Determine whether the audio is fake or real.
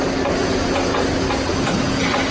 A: real